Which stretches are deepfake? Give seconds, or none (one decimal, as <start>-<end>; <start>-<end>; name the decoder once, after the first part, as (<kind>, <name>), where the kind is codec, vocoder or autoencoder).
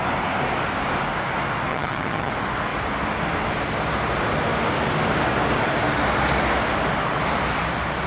1.7-2.3 (vocoder, HiFi-GAN)